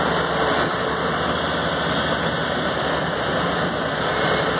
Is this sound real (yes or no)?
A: yes